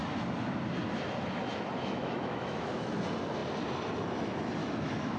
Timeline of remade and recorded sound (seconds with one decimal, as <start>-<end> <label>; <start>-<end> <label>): 0.0-1.8 recorded; 1.8-2.9 remade; 2.9-4.6 recorded; 4.6-5.2 remade